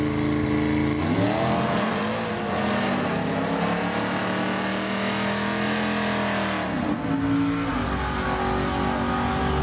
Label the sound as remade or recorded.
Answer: recorded